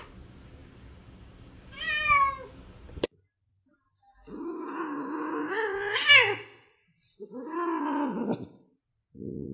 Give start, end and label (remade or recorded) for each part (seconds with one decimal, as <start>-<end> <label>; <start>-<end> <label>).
0.0-9.5 recorded